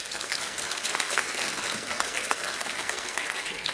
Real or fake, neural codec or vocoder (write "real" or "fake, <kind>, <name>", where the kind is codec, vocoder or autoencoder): fake, codec, SNAC